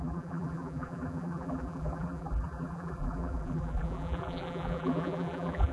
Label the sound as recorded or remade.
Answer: remade